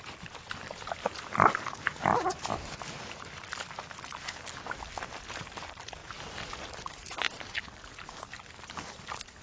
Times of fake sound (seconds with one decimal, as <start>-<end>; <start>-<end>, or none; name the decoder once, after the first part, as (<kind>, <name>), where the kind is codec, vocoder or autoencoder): 2.1-2.8 (vocoder, BigVGAN v2)